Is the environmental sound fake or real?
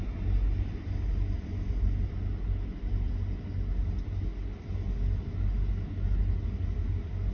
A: real